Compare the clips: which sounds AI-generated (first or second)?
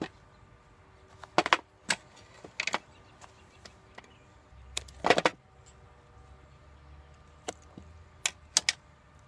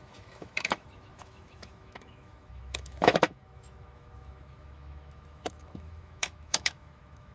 second